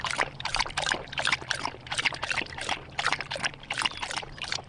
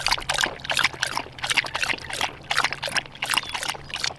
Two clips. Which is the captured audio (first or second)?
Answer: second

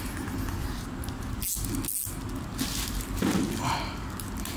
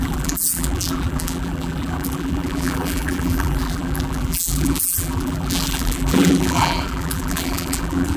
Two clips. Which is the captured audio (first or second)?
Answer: first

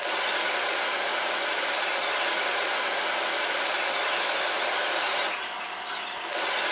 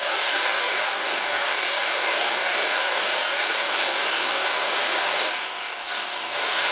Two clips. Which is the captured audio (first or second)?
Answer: first